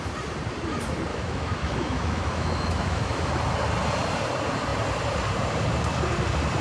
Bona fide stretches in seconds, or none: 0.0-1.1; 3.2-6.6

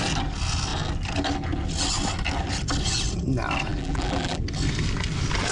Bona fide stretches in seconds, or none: 0.0-3.7; 4.4-5.5

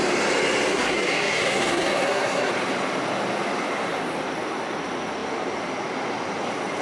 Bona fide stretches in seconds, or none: 0.0-0.7; 2.5-6.8

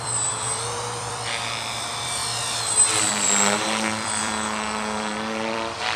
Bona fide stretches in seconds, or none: 2.2-2.9

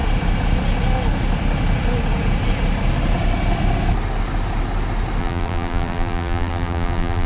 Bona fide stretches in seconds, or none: 0.0-5.2

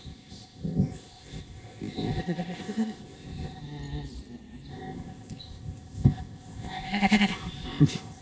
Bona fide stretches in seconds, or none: 3.6-4.7

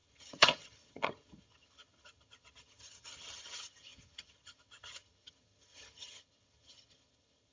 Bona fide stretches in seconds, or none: none